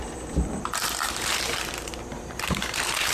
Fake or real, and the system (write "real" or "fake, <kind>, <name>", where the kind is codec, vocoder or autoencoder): fake, vocoder, BigVGAN v2